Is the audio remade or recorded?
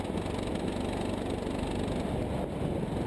recorded